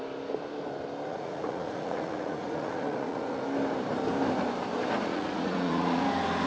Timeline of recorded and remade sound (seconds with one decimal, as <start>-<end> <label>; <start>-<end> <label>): 0.0-1.1 recorded; 1.1-3.4 remade; 3.4-5.1 recorded; 5.1-6.0 remade; 6.0-6.5 recorded